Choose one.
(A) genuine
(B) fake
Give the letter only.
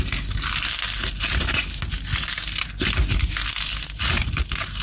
A